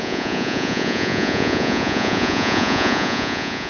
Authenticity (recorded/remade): remade